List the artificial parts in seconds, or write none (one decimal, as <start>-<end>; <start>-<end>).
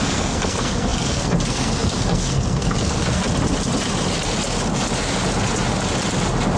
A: 0.0-3.2